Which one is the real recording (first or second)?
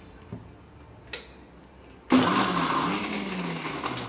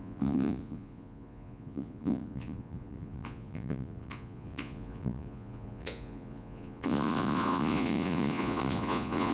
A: first